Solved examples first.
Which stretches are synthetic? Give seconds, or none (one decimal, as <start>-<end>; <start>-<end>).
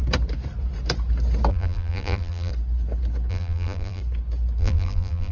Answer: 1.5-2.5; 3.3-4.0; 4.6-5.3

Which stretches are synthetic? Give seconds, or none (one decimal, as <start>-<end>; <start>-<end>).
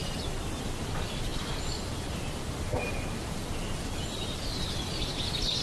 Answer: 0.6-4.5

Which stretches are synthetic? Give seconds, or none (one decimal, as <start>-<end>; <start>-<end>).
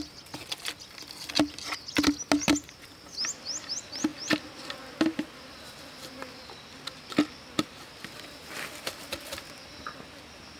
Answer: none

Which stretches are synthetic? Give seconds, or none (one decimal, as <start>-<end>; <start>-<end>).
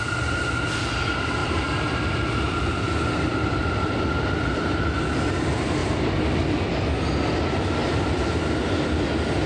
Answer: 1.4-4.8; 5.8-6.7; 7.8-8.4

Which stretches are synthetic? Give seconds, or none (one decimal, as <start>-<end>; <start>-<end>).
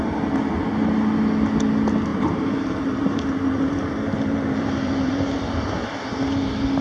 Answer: 2.1-6.2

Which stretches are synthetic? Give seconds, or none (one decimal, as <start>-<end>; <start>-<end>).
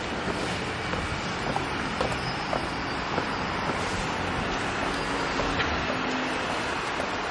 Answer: 1.3-4.3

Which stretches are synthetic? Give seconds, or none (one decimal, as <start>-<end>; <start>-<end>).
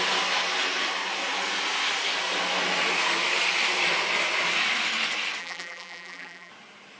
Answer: 5.4-6.5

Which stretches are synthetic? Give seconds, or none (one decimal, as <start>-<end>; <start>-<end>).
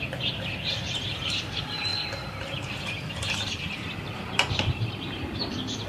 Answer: 0.0-1.9; 3.7-5.9